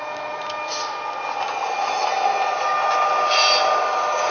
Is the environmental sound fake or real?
real